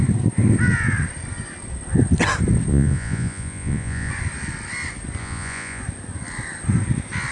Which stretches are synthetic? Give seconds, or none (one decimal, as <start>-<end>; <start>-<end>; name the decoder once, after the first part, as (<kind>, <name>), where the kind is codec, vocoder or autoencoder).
2.7-4.1 (vocoder, Vocos); 5.2-5.8